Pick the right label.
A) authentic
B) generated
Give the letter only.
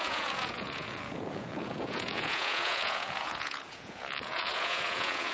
B